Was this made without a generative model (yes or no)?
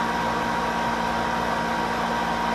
yes